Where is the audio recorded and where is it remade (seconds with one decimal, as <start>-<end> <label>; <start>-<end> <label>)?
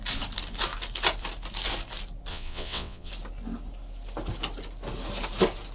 0.0-2.3 recorded; 2.3-3.1 remade; 3.1-5.7 recorded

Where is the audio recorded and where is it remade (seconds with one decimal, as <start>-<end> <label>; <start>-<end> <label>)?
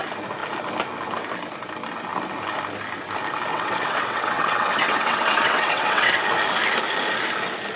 0.0-3.5 recorded; 3.5-6.2 remade; 6.2-7.8 recorded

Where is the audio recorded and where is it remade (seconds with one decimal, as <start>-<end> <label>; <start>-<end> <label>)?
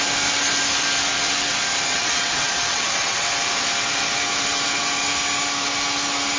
0.0-1.9 recorded; 1.9-3.3 remade; 3.3-6.4 recorded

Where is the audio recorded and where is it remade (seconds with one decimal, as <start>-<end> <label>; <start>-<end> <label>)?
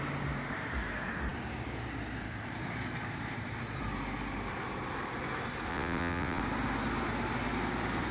0.0-5.7 recorded; 5.7-6.4 remade; 6.4-8.1 recorded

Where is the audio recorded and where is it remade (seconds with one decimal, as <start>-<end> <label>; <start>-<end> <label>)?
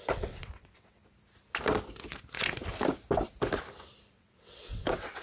0.0-1.0 remade; 1.0-4.1 recorded; 4.1-5.2 remade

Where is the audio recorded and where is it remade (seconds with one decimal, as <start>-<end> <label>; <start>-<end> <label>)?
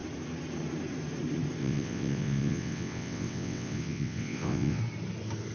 0.0-1.6 recorded; 1.6-4.8 remade; 4.8-5.5 recorded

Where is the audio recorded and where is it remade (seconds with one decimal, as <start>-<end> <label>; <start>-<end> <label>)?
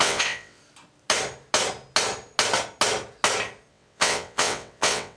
0.0-0.6 remade; 0.6-3.7 recorded; 3.7-5.2 remade